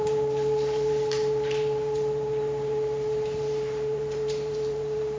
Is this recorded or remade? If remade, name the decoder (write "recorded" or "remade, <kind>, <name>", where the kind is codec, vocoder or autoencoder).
remade, vocoder, BigVGAN v2